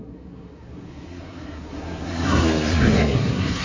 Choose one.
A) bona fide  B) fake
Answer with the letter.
B